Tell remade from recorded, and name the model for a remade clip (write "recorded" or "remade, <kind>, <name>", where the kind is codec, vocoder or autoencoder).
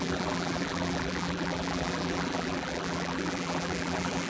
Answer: remade, vocoder, BigVGAN v2